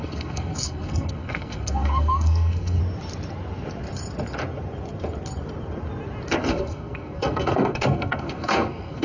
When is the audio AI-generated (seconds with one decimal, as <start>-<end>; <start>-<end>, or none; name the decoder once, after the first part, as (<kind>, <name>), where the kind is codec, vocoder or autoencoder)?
0.0-2.8 (codec, SNAC); 6.5-9.0